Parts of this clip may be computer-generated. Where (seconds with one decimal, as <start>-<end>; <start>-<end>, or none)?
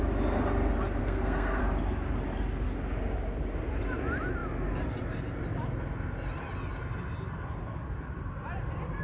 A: 1.0-1.6